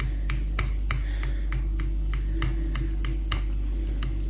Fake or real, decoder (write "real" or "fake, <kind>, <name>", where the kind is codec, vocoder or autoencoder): real